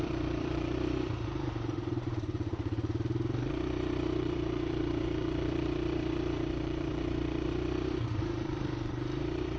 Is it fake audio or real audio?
fake